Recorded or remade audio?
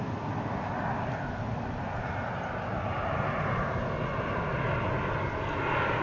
recorded